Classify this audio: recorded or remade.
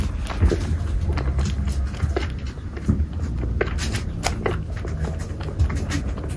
recorded